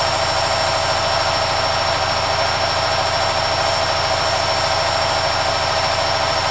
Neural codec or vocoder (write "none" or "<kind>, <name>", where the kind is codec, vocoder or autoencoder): none